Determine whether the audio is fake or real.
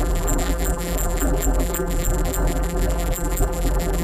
fake